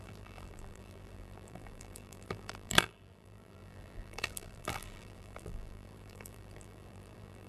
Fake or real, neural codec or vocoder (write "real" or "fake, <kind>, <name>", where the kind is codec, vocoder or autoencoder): fake, vocoder, BigVGAN v2